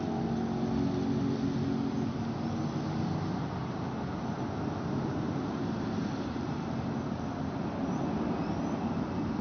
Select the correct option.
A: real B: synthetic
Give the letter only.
A